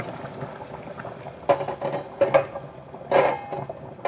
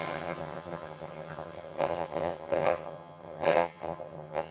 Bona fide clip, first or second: first